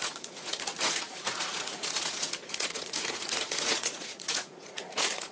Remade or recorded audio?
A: remade